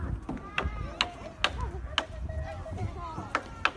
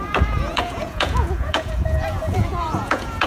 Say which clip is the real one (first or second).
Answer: first